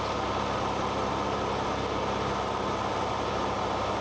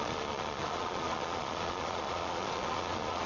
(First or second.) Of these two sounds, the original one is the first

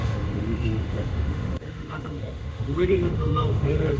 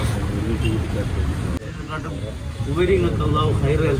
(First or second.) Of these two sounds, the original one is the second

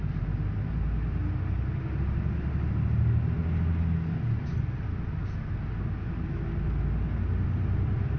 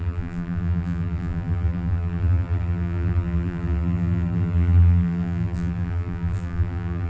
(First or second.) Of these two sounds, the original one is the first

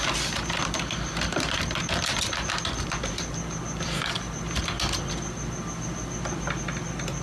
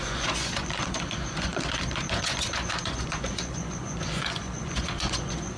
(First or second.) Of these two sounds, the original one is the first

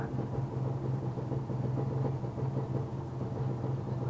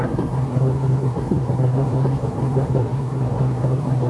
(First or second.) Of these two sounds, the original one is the first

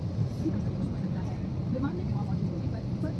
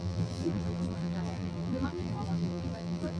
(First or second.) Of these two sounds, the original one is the first